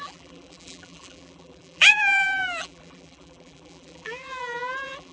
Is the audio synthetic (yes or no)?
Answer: yes